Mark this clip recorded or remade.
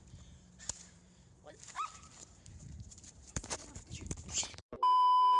remade